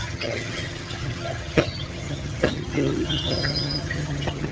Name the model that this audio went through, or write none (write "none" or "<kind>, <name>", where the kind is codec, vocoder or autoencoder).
vocoder, HiFi-GAN